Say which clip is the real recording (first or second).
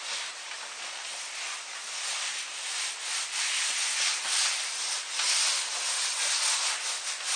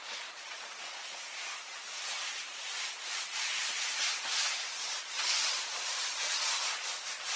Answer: first